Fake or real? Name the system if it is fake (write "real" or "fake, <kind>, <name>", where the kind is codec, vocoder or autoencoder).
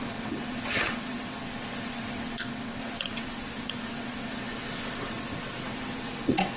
fake, vocoder, WaveNeXt